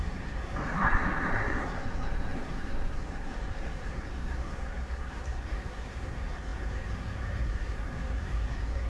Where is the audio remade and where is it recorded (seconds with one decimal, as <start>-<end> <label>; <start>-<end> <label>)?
0.0-8.9 remade